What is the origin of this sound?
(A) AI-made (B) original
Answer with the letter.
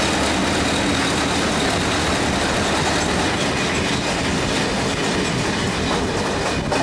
B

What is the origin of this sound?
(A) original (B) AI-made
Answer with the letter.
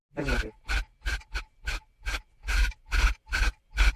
A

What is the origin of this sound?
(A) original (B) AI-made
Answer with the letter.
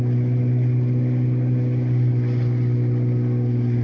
A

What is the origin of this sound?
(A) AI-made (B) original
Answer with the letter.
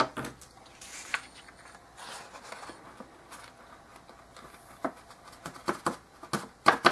B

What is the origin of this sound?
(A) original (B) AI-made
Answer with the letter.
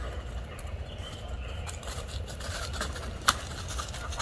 A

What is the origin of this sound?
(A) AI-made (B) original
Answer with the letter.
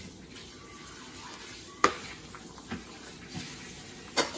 B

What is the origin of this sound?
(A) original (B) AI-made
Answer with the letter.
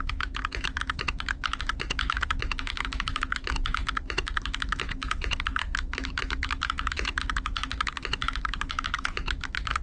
B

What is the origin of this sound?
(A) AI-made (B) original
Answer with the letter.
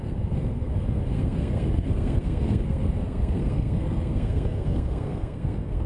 A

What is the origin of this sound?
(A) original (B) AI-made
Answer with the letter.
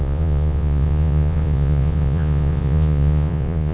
B